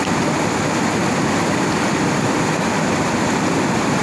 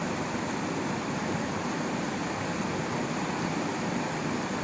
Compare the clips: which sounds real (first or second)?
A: second